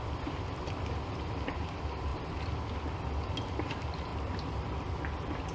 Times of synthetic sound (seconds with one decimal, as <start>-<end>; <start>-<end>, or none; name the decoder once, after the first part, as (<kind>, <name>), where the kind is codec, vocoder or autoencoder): 0.0-4.1 (vocoder, BigVGAN v2); 4.7-5.5

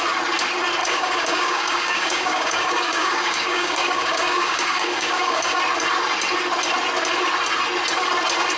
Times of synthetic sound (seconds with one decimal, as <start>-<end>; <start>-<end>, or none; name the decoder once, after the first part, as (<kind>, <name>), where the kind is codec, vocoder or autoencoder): 0.8-5.6 (codec, DAC)

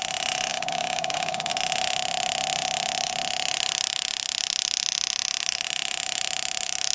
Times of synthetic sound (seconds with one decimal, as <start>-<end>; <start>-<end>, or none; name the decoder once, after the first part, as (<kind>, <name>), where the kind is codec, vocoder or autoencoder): 0.5-1.5 (codec, DAC)

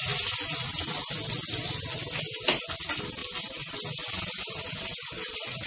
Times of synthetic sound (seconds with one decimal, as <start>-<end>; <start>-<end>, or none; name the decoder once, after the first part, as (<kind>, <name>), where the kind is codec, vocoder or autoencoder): none

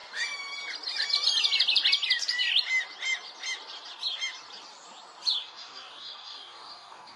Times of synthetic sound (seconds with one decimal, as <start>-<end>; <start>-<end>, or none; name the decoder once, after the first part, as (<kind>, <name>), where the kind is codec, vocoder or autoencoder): 5.4-7.2 (codec, DAC)

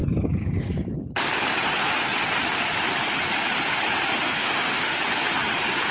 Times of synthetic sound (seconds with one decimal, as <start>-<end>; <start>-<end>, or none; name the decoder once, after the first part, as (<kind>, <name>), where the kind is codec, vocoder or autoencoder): 4.4-5.0 (autoencoder, DAC-VAE)

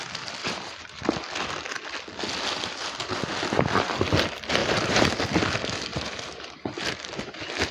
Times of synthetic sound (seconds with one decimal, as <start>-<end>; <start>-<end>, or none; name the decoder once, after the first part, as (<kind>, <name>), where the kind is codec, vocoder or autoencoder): 0.4-1.0 (vocoder, BigVGAN v2); 4.6-5.2; 5.9-6.6